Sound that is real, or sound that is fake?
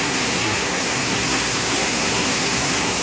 fake